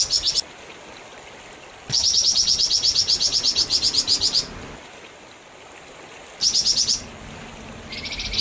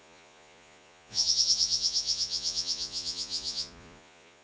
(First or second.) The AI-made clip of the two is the second